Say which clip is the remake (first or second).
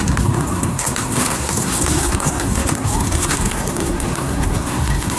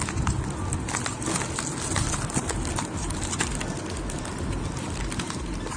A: first